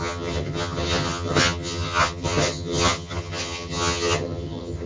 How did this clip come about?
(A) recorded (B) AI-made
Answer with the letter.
B